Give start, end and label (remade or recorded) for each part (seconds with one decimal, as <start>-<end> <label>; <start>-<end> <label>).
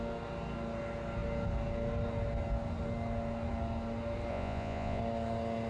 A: 0.0-4.3 recorded; 4.3-5.0 remade; 5.0-5.7 recorded